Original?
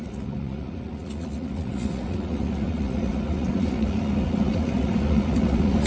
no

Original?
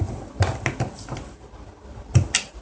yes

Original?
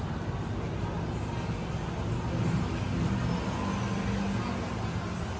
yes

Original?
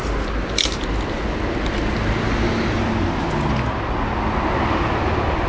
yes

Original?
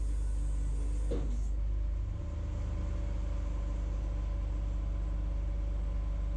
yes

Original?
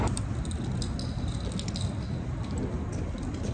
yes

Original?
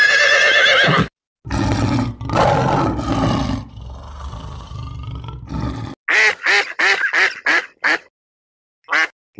yes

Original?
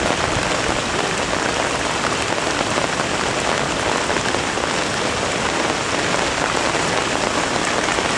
yes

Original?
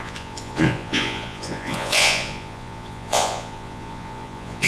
no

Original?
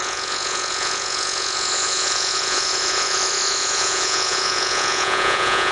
no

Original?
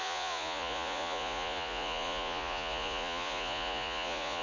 no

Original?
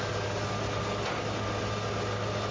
yes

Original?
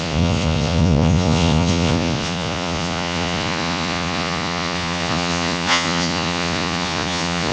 no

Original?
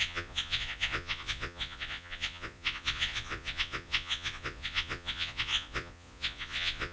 no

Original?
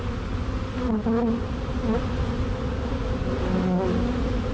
yes